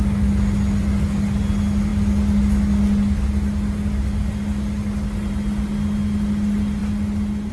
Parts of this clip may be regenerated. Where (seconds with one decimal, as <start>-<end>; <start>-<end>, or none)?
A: none